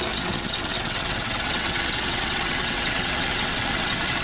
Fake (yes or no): yes